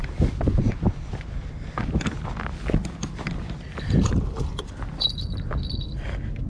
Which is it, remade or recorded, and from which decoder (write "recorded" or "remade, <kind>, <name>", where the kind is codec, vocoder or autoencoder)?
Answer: recorded